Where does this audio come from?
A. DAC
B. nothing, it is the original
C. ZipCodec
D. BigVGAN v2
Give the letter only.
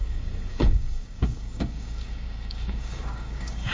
A